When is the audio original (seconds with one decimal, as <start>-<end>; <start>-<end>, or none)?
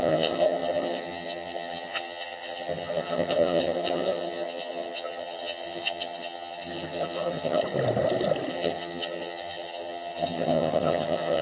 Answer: 7.6-8.5